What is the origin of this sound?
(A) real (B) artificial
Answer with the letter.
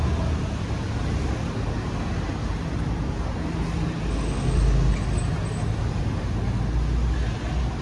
A